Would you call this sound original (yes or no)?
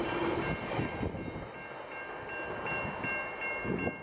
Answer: yes